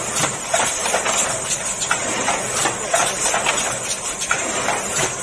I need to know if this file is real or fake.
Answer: real